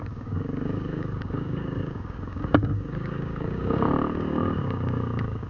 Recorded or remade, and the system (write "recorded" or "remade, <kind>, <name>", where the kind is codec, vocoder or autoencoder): remade, codec, DAC